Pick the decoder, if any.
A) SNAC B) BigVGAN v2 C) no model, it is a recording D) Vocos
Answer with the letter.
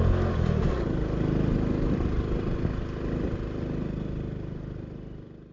C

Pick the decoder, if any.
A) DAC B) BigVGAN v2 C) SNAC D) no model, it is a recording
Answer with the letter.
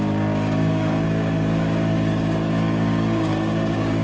A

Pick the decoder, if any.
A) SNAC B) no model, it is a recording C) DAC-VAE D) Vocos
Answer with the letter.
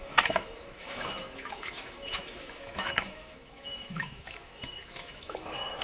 C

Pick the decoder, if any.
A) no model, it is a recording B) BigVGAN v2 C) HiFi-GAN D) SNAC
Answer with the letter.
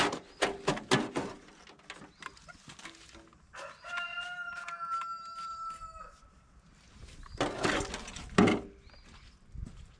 A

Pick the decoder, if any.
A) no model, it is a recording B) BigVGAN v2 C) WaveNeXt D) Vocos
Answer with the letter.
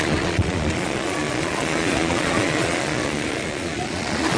D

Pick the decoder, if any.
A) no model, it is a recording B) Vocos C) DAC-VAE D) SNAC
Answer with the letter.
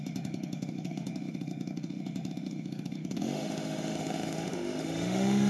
C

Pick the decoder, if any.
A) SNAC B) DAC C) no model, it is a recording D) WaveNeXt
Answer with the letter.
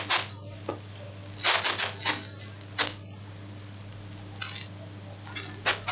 C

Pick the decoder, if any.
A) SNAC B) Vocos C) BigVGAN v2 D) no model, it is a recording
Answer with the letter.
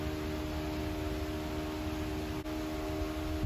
D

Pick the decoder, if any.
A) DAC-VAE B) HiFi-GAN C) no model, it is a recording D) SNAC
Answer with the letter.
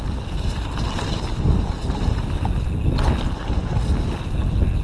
C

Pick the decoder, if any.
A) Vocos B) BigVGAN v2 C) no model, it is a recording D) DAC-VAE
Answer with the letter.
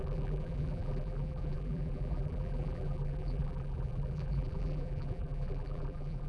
B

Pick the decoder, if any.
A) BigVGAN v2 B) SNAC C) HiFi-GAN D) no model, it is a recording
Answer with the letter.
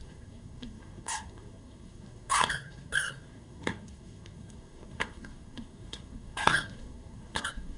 B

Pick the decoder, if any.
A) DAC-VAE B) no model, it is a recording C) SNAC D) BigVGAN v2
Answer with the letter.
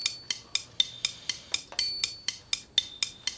B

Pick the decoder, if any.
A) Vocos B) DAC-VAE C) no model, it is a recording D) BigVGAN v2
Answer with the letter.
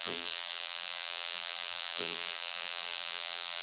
D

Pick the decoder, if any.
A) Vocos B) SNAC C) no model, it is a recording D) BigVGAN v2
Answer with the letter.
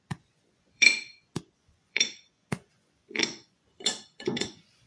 A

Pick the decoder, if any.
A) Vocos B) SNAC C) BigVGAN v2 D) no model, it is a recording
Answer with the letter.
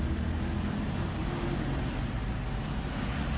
D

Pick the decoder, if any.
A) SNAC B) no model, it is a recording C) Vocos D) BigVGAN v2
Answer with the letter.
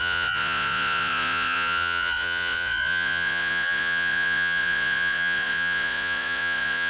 C